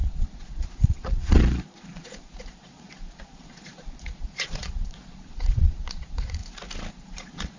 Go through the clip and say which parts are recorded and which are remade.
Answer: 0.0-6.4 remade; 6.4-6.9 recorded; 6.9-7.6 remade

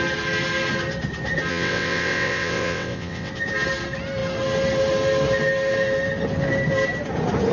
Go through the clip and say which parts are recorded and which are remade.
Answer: 0.0-1.5 recorded; 1.5-3.3 remade; 3.3-7.5 recorded

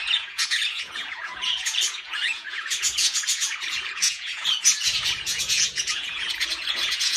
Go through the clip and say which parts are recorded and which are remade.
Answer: 0.0-7.2 remade

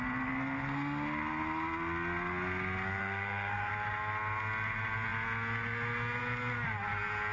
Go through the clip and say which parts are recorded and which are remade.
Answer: 0.0-3.0 recorded; 3.0-3.7 remade; 3.7-7.3 recorded

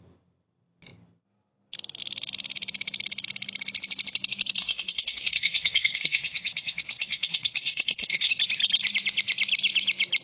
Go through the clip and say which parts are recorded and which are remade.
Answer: 0.0-4.6 recorded; 4.6-8.3 remade; 8.3-10.2 recorded

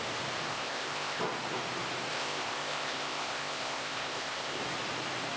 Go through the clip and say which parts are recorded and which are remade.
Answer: 0.0-0.5 recorded; 0.5-1.2 remade; 1.2-2.1 recorded; 2.1-4.6 remade; 4.6-5.4 recorded

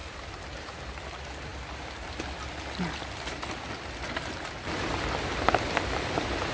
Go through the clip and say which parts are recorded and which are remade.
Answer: 0.0-0.8 remade; 0.8-6.5 recorded

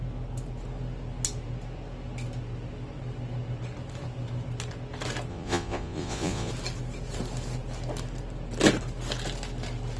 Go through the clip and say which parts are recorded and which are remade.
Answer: 0.0-5.3 recorded; 5.3-6.5 remade; 6.5-10.0 recorded